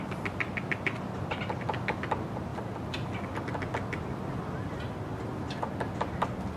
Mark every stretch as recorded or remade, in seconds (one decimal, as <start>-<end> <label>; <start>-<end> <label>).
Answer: 0.0-6.6 recorded